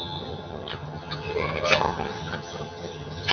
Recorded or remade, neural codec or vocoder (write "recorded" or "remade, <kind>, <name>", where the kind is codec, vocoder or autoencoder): remade, vocoder, HiFi-GAN